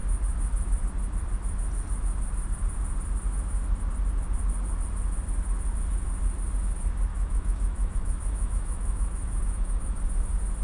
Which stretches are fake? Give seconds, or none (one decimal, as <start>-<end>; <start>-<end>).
7.1-10.0